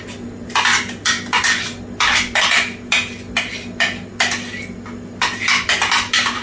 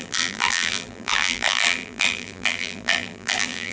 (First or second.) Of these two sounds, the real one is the first